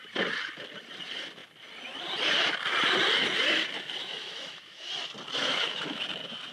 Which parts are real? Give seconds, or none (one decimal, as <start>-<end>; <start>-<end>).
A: 0.0-4.0; 4.9-5.4; 6.0-6.5